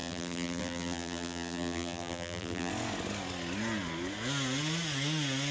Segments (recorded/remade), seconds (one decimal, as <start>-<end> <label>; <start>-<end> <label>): 0.0-2.7 remade; 2.7-5.5 recorded